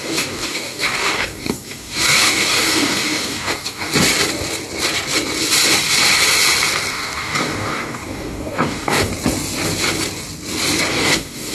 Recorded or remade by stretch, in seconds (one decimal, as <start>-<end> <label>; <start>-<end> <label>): 0.0-3.9 remade; 3.9-6.9 recorded; 6.9-9.1 remade; 9.1-10.9 recorded; 10.9-11.5 remade